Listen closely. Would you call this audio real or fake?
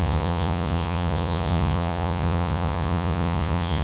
fake